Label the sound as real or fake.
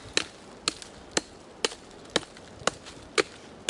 real